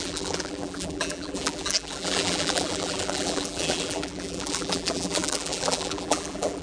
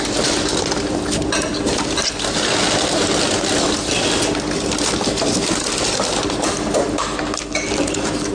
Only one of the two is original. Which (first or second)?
second